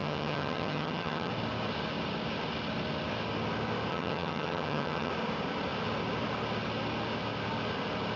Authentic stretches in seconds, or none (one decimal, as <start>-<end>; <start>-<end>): 1.3-3.9; 5.1-8.2